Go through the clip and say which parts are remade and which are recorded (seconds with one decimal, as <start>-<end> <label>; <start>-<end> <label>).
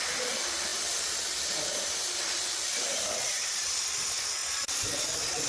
0.0-5.5 recorded